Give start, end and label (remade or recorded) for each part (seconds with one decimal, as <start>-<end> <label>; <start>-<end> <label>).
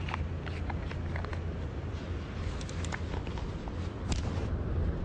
0.0-5.0 recorded